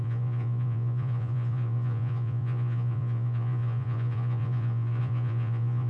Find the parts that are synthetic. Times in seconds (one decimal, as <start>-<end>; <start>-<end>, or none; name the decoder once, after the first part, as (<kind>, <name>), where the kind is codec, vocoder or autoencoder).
0.0-5.9 (vocoder, Vocos)